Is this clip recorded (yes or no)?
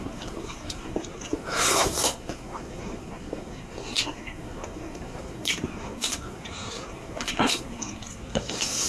no